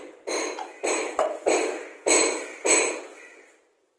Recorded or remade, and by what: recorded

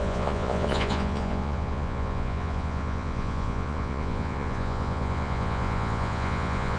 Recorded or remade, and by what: remade, vocoder, Vocos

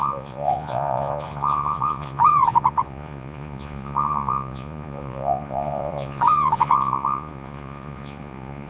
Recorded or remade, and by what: remade, vocoder, Vocos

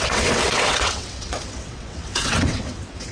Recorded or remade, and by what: remade, vocoder, WaveNeXt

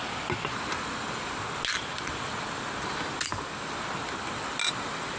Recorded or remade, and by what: recorded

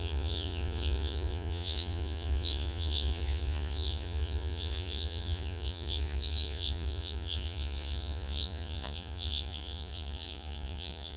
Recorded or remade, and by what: remade, vocoder, Vocos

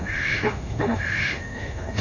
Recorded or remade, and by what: remade, autoencoder, DAC-VAE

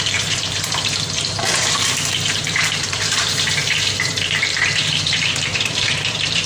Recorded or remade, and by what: remade, vocoder, BigVGAN v2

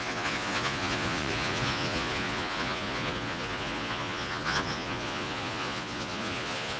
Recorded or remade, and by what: remade, vocoder, Vocos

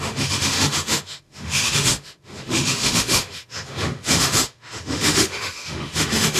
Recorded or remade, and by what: remade, autoencoder, DAC-VAE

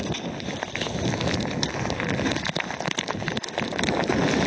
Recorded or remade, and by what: recorded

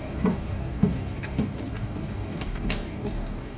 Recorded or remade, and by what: remade, codec, DAC